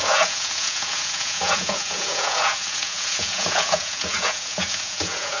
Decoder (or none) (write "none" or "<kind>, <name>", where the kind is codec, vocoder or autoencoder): vocoder, Vocos